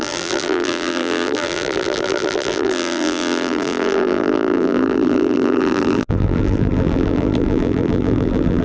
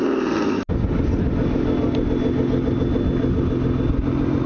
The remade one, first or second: first